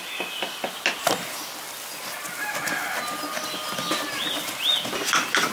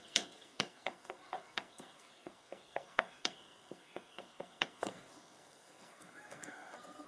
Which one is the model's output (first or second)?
second